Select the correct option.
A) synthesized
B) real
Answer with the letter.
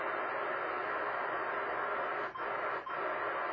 B